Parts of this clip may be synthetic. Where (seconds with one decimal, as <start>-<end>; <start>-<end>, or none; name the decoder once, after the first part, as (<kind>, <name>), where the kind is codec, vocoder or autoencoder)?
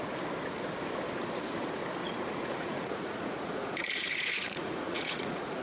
2.0-5.6 (vocoder, Vocos)